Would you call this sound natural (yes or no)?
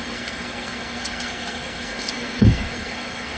no